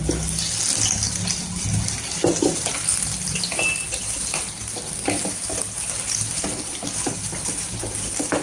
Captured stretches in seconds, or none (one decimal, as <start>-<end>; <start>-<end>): 0.0-8.4